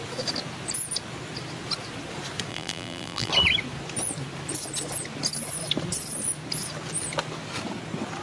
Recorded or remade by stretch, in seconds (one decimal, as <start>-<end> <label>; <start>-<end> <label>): 0.0-2.5 recorded; 2.5-3.3 remade; 3.3-8.2 recorded